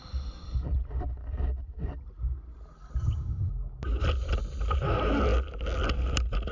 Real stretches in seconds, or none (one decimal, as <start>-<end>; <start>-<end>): 0.0-3.0; 3.5-6.5